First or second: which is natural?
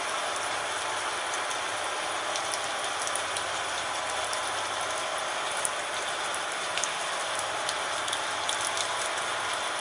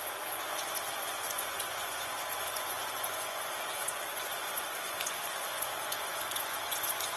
first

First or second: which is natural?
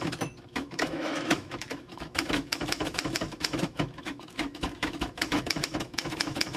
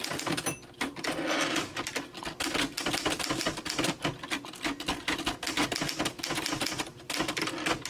second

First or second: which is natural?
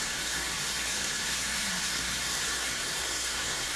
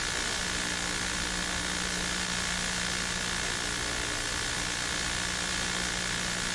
second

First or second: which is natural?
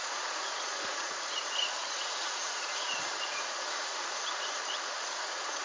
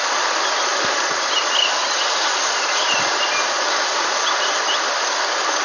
second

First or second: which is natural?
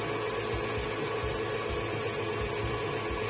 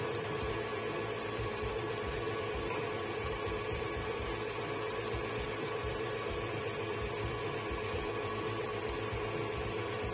first